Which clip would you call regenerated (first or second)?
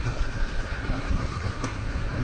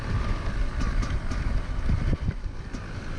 first